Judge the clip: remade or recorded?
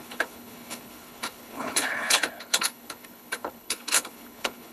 remade